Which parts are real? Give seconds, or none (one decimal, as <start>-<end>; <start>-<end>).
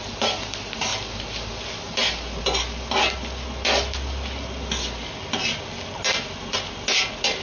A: 0.0-7.4